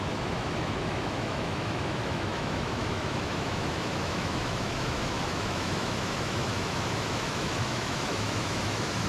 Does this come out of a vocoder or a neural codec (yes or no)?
yes